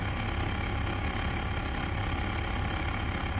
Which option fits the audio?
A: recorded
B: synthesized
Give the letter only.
A